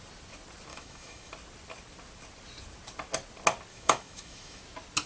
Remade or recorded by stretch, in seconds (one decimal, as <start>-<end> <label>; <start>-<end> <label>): 0.0-0.7 recorded; 0.7-1.3 remade; 1.3-3.7 recorded; 3.7-4.6 remade; 4.6-5.1 recorded